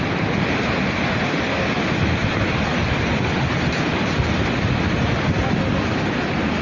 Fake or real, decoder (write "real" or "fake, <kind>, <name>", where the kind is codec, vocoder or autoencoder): real